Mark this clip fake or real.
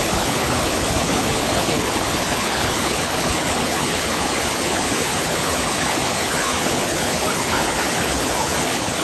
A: fake